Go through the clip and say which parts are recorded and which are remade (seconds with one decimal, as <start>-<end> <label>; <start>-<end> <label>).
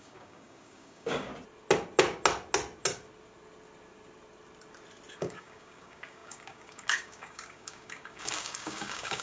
0.0-1.3 remade; 1.3-5.2 recorded; 5.2-9.2 remade